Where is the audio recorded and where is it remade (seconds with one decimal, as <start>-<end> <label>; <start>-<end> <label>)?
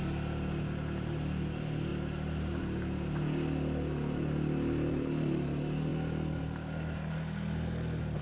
0.0-8.2 recorded